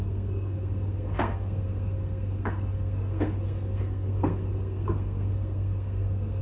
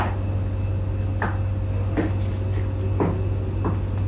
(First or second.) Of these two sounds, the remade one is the first